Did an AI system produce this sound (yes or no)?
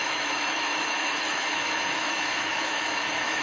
yes